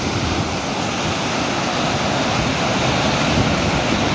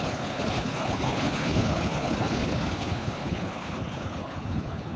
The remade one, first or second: second